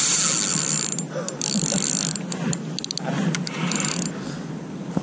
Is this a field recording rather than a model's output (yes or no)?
yes